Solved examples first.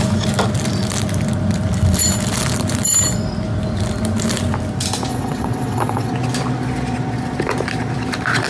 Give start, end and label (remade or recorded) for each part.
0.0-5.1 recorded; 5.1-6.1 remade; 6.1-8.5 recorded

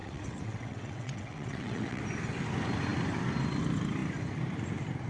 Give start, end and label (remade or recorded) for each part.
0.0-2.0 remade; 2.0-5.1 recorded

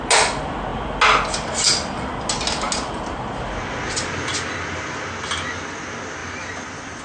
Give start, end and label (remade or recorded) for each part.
0.0-7.0 recorded

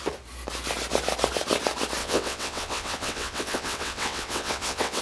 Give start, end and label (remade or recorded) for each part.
0.0-2.0 recorded; 2.0-5.0 remade

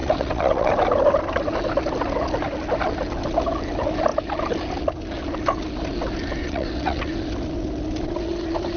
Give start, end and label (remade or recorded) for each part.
0.0-0.7 remade; 0.7-6.4 recorded; 6.4-7.1 remade; 7.1-8.8 recorded

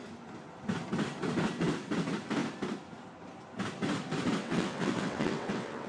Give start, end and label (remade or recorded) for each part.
0.0-4.4 recorded; 4.4-5.9 remade

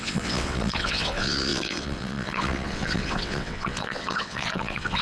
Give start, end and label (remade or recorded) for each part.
0.0-5.0 remade

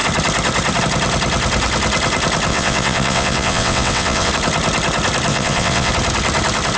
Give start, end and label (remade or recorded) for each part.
0.0-2.5 recorded; 2.5-4.3 remade; 4.3-5.3 recorded; 5.3-5.9 remade; 5.9-6.8 recorded